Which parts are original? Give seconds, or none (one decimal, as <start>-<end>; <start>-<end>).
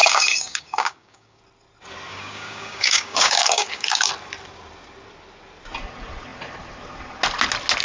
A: 1.4-2.1; 4.1-7.8